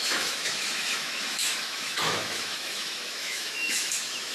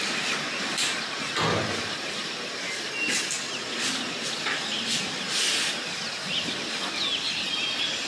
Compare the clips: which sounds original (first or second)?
second